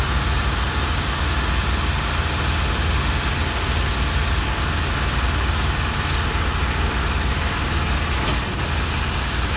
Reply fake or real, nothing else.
real